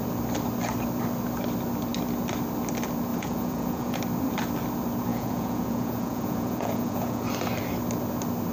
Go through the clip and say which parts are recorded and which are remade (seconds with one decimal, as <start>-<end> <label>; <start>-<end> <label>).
0.0-3.1 recorded; 3.1-4.0 remade; 4.0-5.1 recorded; 5.1-7.3 remade; 7.3-8.5 recorded